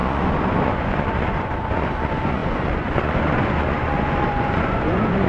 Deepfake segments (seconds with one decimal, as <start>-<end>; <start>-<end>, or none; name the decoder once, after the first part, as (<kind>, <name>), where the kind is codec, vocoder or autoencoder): 0.0-5.3 (vocoder, Vocos)